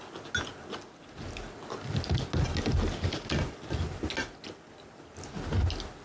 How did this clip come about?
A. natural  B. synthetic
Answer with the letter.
A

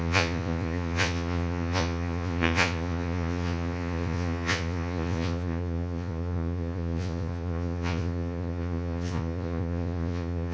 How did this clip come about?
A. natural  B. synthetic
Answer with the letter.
B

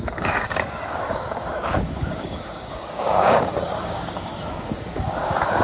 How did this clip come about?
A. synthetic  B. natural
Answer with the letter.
A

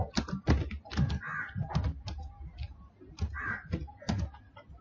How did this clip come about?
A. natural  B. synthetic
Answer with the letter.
A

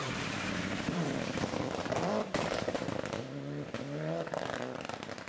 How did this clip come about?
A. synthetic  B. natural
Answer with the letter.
A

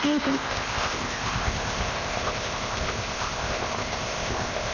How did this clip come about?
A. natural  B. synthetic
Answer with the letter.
B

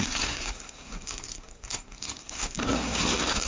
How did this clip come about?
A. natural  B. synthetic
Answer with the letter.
B